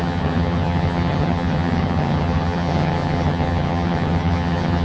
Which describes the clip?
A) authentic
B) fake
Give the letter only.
B